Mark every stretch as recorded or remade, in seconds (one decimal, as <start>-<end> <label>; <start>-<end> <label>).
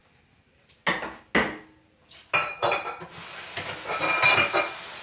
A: 0.0-5.0 recorded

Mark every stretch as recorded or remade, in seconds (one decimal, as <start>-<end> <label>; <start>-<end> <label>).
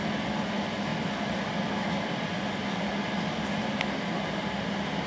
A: 0.0-5.1 recorded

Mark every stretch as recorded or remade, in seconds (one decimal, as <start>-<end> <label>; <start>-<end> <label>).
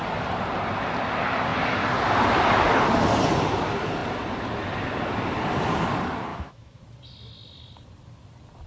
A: 0.0-6.3 recorded; 6.3-6.8 remade; 6.8-8.7 recorded